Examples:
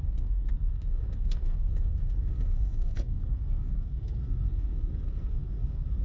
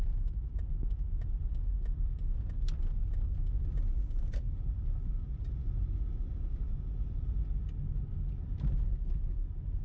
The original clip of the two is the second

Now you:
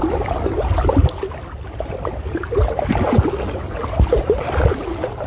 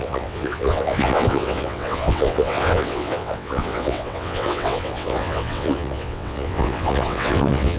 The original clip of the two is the first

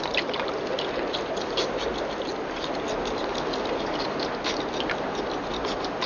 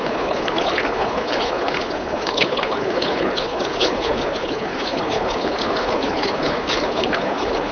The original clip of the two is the first